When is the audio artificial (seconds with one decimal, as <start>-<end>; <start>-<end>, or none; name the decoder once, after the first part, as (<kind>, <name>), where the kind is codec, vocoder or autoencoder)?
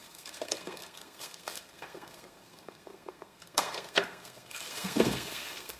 0.0-5.8 (codec, SNAC)